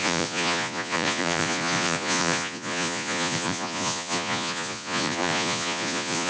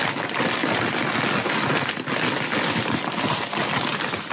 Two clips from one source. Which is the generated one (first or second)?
first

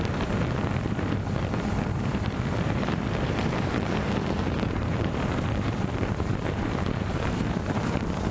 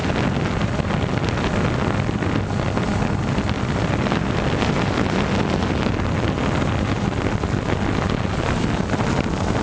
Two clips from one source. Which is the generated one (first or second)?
first